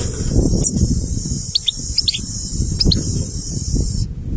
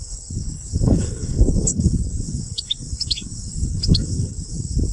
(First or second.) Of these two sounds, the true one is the first